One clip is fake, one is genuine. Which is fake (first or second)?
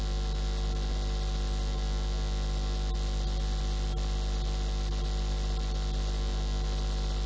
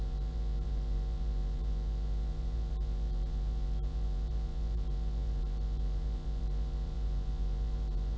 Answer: second